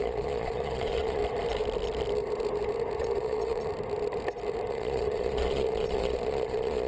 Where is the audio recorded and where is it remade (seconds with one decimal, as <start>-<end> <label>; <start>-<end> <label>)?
0.0-1.2 remade; 1.2-3.0 recorded; 3.0-3.7 remade; 3.7-4.7 recorded; 4.7-6.9 remade